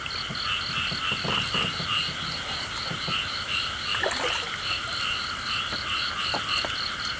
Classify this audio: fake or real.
real